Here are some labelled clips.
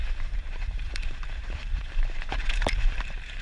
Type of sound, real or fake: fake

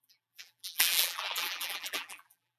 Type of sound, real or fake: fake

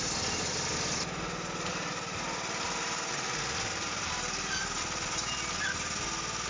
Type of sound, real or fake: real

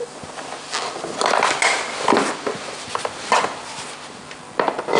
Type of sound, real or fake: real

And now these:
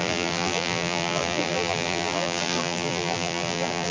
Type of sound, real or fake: fake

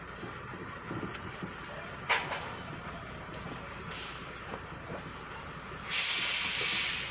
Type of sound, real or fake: real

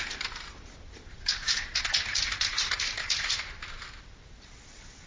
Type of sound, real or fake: real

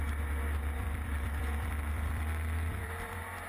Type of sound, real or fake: fake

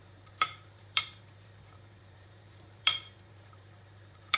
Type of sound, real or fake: fake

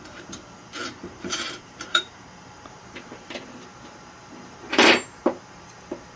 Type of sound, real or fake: fake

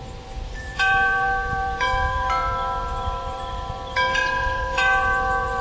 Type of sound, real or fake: fake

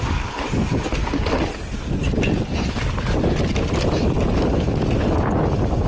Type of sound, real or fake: real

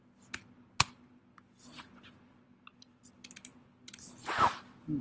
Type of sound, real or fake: real